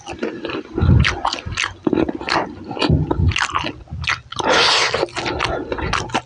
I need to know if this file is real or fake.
real